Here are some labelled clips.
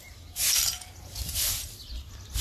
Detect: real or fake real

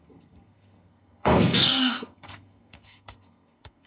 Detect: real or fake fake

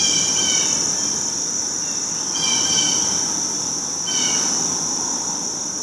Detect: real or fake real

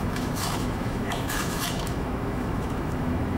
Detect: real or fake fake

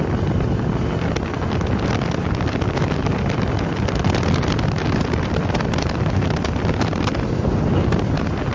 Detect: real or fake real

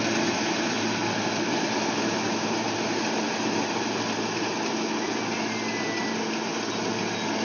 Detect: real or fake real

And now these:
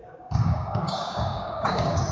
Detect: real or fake fake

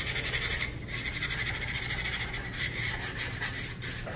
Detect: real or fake real